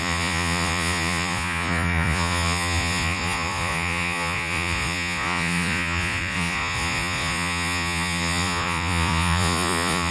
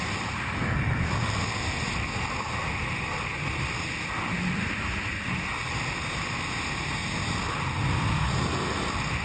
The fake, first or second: first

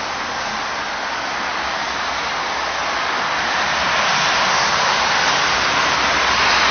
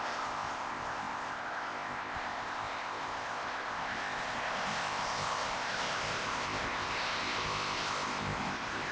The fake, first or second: second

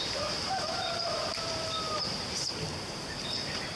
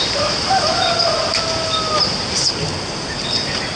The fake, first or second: first